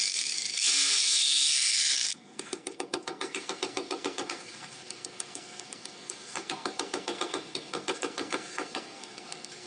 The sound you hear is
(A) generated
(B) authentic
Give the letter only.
A